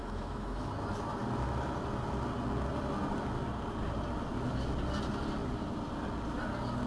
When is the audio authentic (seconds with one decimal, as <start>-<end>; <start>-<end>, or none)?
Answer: 0.7-6.9